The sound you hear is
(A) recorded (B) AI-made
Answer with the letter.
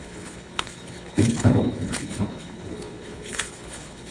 B